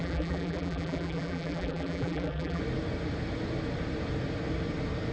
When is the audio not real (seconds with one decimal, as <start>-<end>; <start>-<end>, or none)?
0.0-2.6